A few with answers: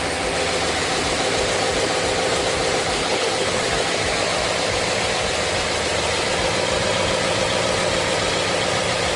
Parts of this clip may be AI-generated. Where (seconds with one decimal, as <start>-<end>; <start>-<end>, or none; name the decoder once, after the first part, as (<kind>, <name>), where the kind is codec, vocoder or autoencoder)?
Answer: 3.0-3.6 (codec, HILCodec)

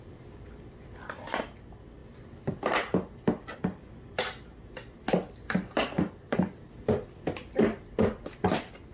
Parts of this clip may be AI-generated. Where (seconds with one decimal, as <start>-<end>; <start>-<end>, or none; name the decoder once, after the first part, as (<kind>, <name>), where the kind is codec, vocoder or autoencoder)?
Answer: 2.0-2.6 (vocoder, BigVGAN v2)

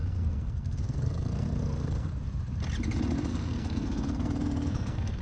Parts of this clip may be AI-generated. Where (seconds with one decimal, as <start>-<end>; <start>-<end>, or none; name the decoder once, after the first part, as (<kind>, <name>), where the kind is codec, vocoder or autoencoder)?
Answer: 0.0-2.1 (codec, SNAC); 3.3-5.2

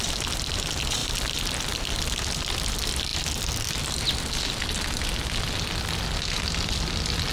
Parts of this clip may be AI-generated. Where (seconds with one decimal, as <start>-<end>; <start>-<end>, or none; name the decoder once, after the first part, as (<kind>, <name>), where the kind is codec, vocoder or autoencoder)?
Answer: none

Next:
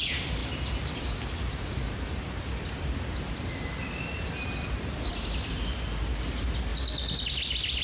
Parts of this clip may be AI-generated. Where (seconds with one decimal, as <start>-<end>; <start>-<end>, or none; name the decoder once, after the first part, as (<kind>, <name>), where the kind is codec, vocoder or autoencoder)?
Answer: none

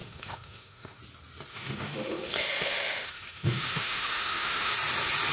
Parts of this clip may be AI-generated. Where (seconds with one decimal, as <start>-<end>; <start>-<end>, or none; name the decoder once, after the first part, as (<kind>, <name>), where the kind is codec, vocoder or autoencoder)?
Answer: 0.0-1.0 (autoencoder, DAC-VAE); 1.5-4.7

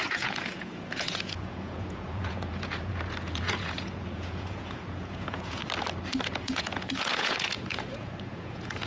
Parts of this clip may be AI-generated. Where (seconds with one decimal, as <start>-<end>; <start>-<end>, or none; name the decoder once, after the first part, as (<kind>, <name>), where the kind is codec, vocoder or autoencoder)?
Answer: 0.0-5.6 (vocoder, Vocos); 6.2-8.9